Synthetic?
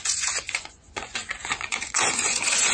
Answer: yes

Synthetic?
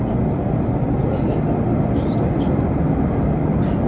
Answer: no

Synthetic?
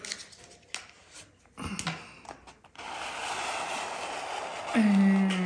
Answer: no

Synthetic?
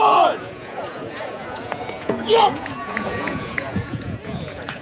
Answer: yes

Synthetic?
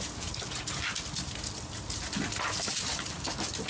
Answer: no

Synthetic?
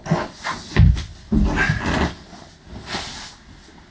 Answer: no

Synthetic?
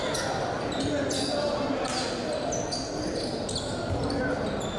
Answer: no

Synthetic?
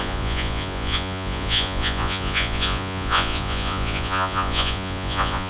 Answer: yes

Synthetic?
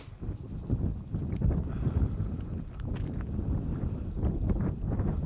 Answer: no